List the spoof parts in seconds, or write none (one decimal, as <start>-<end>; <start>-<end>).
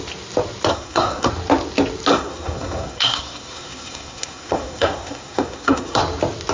0.7-1.3; 2.1-6.0